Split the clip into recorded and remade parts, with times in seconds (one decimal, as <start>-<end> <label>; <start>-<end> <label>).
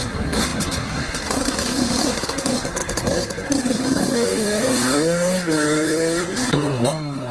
0.0-7.3 remade